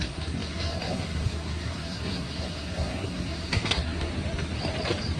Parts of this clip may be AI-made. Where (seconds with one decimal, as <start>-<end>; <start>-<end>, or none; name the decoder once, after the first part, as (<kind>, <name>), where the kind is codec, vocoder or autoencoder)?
0.0-4.1 (codec, SNAC)